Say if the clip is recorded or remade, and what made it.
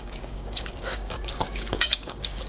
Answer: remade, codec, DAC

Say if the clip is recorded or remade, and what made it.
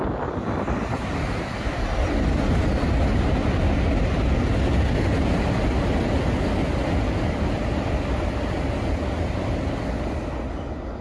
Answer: recorded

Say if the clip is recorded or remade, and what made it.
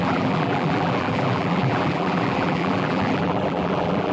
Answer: remade, vocoder, BigVGAN v2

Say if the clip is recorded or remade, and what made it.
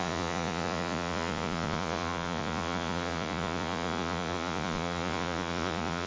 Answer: remade, vocoder, Vocos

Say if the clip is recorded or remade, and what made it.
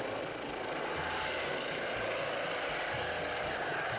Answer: recorded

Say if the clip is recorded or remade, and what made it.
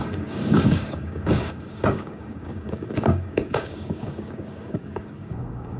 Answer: remade, codec, DAC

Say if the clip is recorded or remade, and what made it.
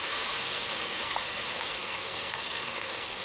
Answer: remade, codec, SNAC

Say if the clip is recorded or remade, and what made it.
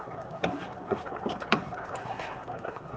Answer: remade, codec, SNAC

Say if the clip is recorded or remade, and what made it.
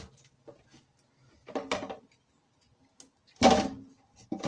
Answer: recorded